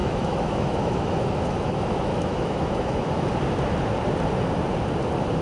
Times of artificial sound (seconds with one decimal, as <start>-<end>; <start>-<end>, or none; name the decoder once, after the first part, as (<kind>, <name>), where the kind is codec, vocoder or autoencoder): 0.0-3.1 (autoencoder, DAC-VAE)